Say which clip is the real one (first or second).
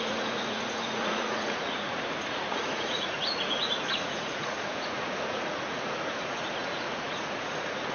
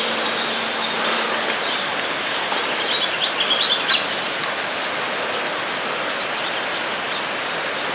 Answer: second